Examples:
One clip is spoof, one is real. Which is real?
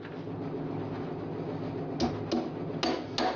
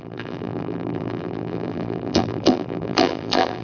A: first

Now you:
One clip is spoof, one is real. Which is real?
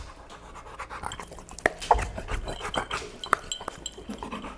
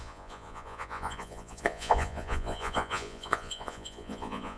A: first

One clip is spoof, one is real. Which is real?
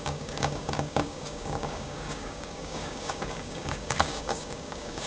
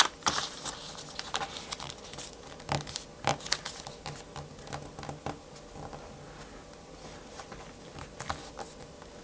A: second